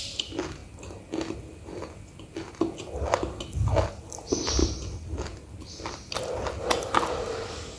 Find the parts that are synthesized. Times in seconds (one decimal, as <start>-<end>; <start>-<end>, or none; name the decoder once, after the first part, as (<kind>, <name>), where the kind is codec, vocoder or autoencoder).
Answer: 4.6-6.6 (vocoder, BigVGAN v2)